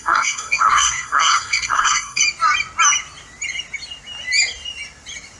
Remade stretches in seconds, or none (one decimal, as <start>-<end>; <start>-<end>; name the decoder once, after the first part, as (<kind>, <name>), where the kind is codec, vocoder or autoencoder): 0.0-2.2 (codec, SNAC)